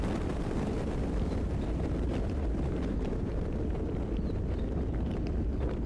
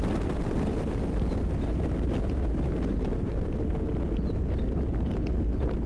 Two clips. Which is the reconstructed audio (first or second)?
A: first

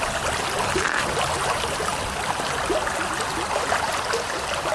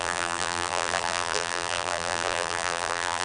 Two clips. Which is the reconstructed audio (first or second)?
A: second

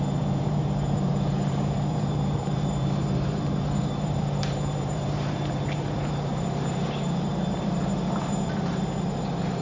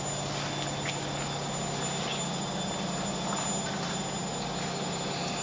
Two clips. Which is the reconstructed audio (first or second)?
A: first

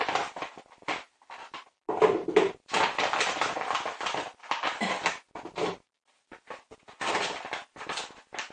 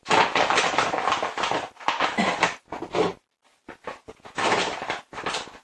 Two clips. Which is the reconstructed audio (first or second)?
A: first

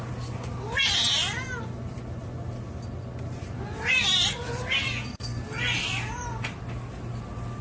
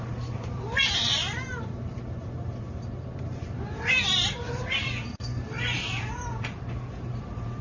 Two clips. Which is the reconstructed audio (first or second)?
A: second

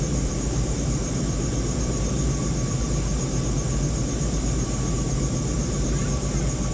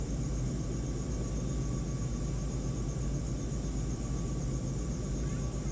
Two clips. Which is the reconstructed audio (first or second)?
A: first